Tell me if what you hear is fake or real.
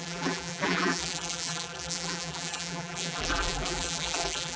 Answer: fake